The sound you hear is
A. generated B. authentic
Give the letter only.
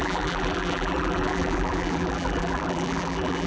A